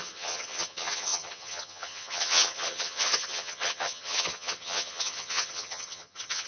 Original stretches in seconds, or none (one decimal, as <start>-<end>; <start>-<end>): none

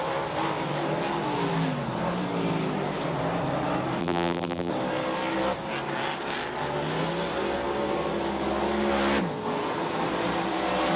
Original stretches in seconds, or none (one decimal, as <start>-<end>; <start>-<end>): 0.0-4.0; 4.7-11.0

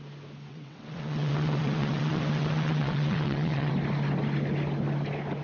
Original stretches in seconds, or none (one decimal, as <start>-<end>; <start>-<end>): 0.0-0.5; 3.7-5.4

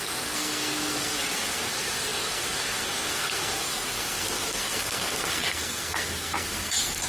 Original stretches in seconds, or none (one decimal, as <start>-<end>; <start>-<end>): none

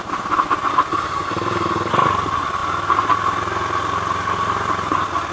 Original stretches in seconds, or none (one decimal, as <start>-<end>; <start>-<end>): 0.0-0.9; 1.9-5.3

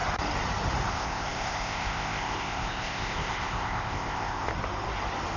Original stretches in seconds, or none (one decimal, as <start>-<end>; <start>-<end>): 0.0-0.9; 4.5-5.4